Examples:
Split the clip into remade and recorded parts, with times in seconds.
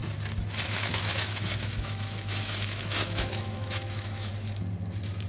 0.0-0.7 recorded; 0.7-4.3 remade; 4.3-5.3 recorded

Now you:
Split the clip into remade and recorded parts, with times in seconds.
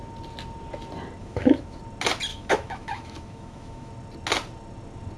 0.0-1.2 recorded; 1.2-1.8 remade; 1.8-2.3 recorded; 2.3-3.9 remade; 3.9-5.2 recorded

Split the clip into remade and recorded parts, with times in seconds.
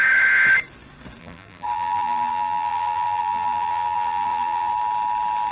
0.0-1.2 recorded; 1.2-4.7 remade; 4.7-5.5 recorded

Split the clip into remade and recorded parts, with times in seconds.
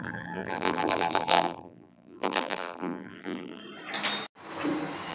0.0-3.6 remade; 3.6-5.1 recorded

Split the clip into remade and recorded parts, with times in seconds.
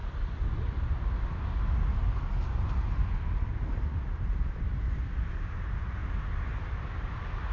0.0-7.5 recorded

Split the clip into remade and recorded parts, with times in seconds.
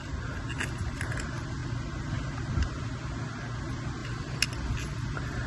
0.0-5.5 recorded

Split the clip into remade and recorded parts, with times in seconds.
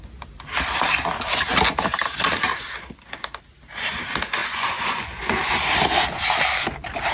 0.0-4.4 recorded; 4.4-5.5 remade; 5.5-7.1 recorded